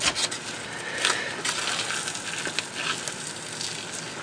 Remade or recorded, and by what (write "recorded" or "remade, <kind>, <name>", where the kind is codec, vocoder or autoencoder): recorded